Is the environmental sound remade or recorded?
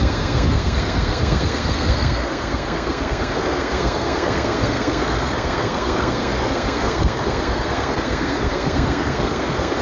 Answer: remade